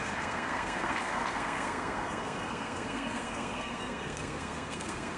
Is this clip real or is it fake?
fake